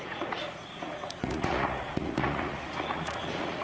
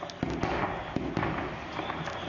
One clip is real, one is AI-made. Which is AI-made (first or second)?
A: first